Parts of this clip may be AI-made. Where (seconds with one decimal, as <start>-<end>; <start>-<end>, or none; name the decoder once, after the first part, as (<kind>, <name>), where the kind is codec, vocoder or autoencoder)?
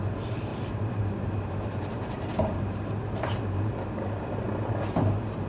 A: 0.5-3.7 (vocoder, BigVGAN v2)